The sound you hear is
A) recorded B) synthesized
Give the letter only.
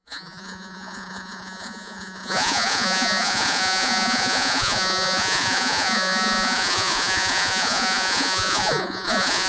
B